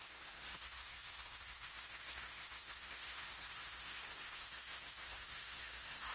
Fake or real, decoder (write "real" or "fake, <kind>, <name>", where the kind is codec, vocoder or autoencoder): fake, codec, SNAC